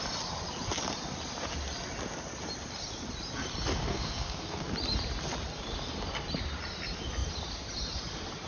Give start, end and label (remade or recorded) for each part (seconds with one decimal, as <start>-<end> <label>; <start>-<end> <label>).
0.0-3.9 recorded; 3.9-4.7 remade; 4.7-8.5 recorded